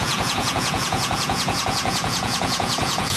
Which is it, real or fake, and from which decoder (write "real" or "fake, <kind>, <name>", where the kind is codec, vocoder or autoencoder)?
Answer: fake, vocoder, Vocos